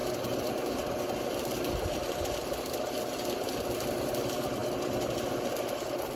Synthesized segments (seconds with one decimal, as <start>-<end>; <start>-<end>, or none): none